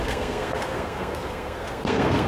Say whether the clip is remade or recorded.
remade